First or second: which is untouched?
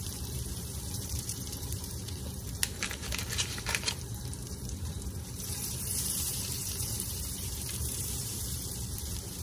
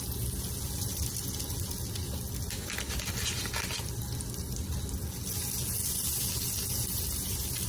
second